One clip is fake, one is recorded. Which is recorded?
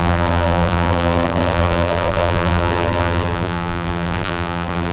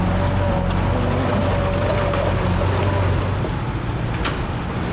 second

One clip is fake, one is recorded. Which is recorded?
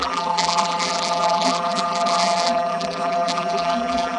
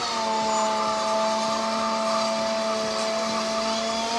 second